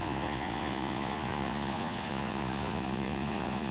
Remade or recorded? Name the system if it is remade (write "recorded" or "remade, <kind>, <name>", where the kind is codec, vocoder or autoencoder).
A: remade, vocoder, Vocos